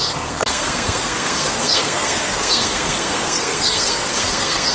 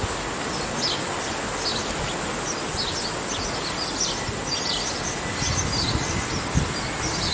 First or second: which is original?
second